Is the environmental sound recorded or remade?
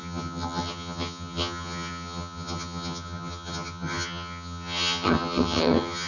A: remade